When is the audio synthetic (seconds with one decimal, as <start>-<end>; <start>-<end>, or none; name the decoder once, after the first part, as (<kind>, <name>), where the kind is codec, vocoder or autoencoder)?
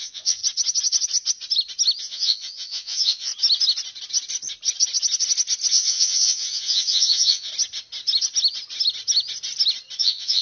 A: 0.0-0.4 (vocoder, Vocos); 2.0-3.3; 5.7-7.5; 10.0-10.4